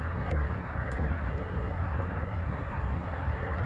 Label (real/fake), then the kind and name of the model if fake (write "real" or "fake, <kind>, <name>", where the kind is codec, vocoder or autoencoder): fake, codec, SNAC